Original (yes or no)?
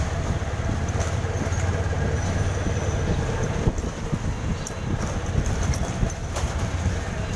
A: yes